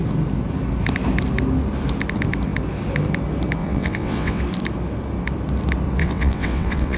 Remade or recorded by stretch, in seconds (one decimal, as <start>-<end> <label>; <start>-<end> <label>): 0.0-3.6 recorded; 3.6-4.4 remade; 4.4-6.0 recorded; 6.0-7.0 remade